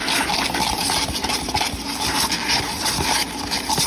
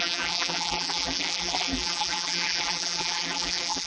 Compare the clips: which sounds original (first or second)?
first